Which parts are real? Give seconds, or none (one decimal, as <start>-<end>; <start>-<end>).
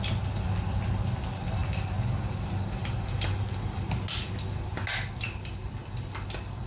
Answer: 0.0-6.7